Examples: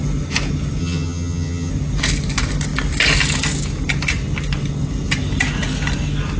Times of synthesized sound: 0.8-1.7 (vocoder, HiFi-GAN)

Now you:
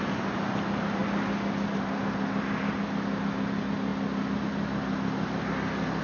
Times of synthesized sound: none

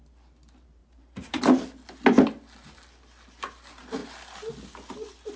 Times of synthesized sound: 0.8-1.4 (vocoder, BigVGAN v2)

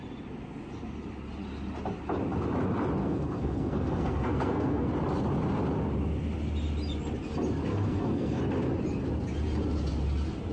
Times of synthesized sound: 3.0-4.9 (codec, SNAC); 7.7-8.4

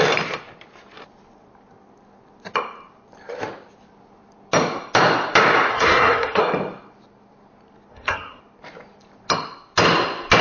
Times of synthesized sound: 5.7-6.4 (codec, SNAC); 7.9-8.4

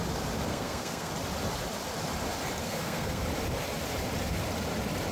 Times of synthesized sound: 0.5-1.1 (codec, SNAC); 2.6-3.2